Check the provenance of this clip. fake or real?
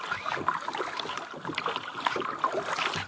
real